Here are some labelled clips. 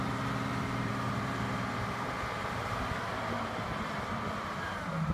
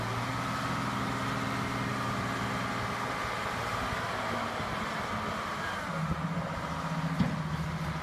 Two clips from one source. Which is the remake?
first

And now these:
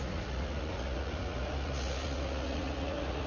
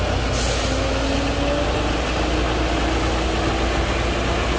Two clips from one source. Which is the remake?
first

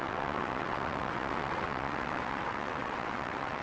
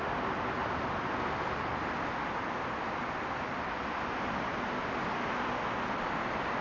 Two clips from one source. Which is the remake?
first